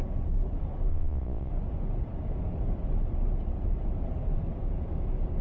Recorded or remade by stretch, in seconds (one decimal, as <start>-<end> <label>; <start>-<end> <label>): 0.0-0.9 recorded; 0.9-1.5 remade; 1.5-5.4 recorded